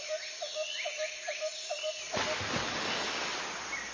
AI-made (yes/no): no